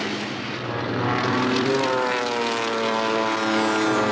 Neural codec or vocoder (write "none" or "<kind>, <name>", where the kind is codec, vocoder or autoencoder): none